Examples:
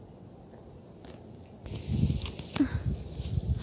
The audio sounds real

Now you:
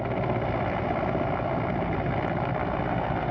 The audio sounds real